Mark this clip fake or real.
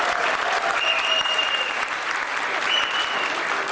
real